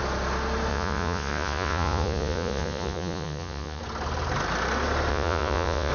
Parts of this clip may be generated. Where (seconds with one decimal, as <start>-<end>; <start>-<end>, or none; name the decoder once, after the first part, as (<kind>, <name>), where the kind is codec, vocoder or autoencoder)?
0.7-3.8 (vocoder, Vocos); 5.1-5.9

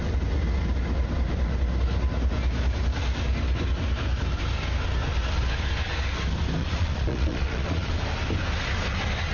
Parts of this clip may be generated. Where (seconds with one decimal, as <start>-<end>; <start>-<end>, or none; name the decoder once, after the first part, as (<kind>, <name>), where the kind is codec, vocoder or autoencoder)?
6.6-7.9 (vocoder, Vocos)

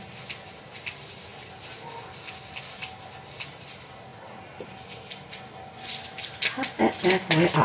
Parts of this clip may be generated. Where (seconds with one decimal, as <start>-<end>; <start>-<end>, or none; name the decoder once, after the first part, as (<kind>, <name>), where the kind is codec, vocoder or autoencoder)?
none

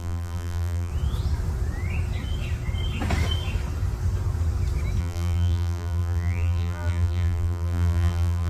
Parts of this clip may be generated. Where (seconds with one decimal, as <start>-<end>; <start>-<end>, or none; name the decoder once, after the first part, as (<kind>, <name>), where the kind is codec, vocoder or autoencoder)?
0.0-0.9 (vocoder, BigVGAN v2); 5.0-8.5

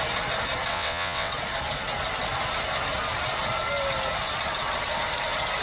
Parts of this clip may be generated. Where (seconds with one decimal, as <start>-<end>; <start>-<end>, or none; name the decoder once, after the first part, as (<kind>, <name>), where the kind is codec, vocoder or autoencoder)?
0.7-1.3 (vocoder, WaveNeXt)

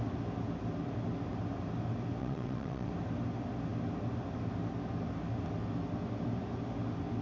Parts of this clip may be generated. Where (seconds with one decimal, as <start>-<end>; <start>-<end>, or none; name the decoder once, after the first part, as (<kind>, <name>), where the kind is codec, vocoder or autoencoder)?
2.2-2.9 (vocoder, WaveNeXt)

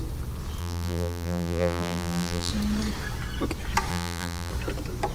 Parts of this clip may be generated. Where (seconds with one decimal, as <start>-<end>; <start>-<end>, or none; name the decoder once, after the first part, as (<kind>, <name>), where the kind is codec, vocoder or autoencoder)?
0.6-2.5 (vocoder, BigVGAN v2); 3.9-4.5

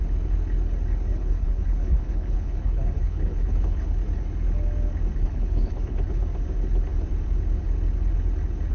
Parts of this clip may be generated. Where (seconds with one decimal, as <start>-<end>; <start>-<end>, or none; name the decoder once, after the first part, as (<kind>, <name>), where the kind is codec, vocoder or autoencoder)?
1.1-3.9 (codec, HILCodec); 5.2-6.2